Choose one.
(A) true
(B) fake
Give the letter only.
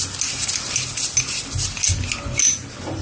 A